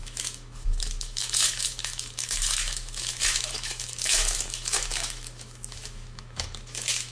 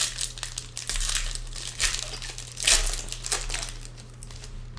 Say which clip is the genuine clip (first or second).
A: second